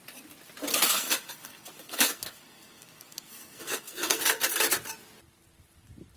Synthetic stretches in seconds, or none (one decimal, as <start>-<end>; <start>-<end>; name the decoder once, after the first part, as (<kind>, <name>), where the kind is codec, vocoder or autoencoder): 0.7-4.4 (codec, SNAC)